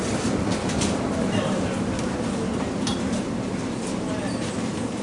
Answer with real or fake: real